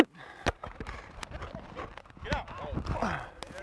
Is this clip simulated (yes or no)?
no